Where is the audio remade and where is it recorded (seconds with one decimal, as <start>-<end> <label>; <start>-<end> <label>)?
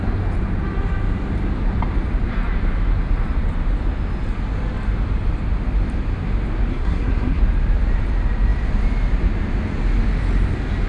0.0-6.7 recorded; 6.7-7.4 remade; 7.4-10.9 recorded